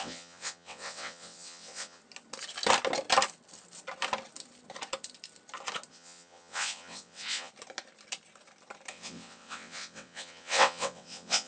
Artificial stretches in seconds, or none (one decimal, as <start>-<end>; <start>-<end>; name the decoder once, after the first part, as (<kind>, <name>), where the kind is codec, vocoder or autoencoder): 0.0-2.0 (vocoder, WaveNeXt); 5.9-7.5; 8.9-11.5